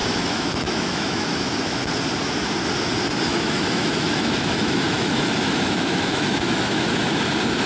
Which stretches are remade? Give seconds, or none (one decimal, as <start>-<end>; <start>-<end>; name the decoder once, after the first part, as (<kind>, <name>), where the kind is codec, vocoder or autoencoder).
0.0-1.8 (autoencoder, DAC-VAE); 3.3-6.9